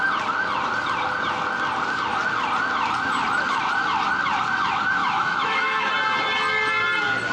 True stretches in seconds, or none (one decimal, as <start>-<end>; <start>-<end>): 0.0-5.0; 5.9-7.3